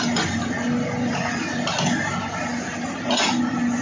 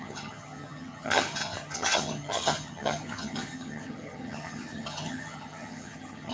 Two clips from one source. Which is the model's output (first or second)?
second